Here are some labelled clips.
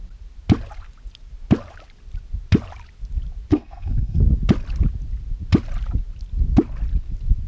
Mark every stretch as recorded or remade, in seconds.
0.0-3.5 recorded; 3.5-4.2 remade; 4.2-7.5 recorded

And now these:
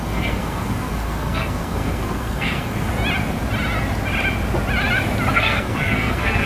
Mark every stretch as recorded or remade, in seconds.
0.0-2.9 remade; 2.9-5.3 recorded; 5.3-6.5 remade

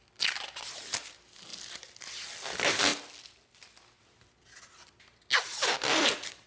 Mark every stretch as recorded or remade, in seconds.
0.0-6.5 recorded

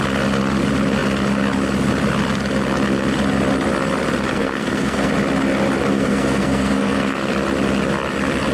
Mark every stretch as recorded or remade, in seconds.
0.0-4.3 recorded; 4.3-5.1 remade; 5.1-5.9 recorded; 5.9-7.3 remade; 7.3-8.5 recorded